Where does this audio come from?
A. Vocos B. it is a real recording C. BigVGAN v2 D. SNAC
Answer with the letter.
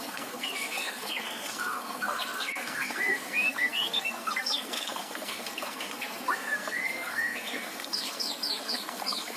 D